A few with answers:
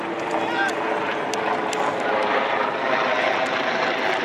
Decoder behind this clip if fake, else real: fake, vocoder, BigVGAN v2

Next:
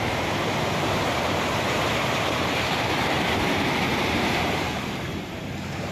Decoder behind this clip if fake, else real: fake, vocoder, BigVGAN v2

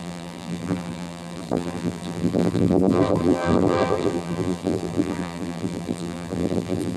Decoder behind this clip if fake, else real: fake, vocoder, BigVGAN v2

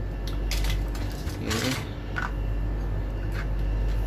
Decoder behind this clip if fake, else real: real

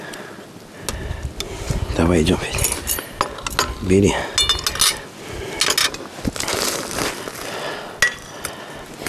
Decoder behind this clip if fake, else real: real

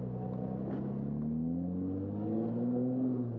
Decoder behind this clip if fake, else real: real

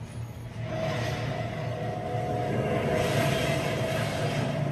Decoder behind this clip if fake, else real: real